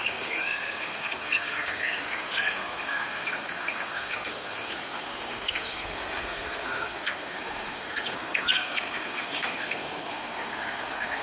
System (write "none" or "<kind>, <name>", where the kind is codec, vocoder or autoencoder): codec, SNAC